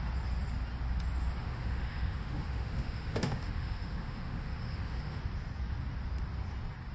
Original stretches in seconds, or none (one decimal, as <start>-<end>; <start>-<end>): 0.0-1.4; 5.2-6.9